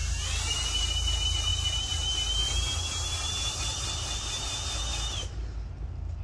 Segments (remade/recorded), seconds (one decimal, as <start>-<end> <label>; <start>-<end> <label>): 0.0-6.2 recorded